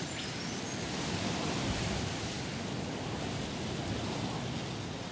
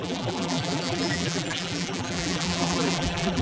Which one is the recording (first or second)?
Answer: first